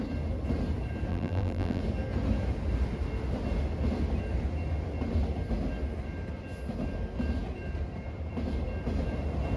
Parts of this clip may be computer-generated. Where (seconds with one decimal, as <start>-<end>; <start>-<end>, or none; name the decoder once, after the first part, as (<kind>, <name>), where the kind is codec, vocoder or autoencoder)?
1.1-1.8 (vocoder, BigVGAN v2)